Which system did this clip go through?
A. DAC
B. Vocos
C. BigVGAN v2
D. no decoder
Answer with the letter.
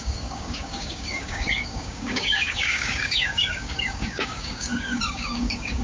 A